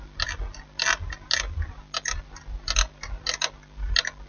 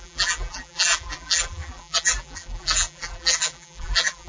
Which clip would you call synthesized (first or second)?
second